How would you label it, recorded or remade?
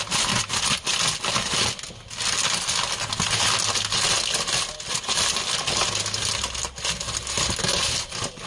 recorded